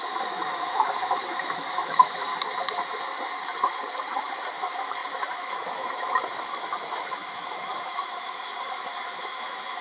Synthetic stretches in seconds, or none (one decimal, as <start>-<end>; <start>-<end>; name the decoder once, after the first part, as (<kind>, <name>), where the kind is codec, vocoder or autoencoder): 0.0-2.3 (autoencoder, DAC-VAE); 4.2-9.8